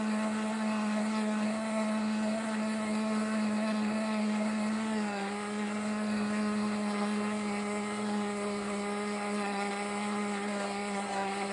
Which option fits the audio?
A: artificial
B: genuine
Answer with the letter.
A